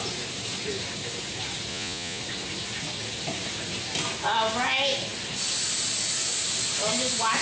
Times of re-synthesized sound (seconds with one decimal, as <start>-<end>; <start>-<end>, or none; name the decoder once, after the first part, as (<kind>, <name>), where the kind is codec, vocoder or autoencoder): 1.7-2.2 (vocoder, Vocos)